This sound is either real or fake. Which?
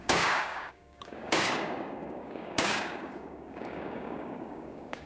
fake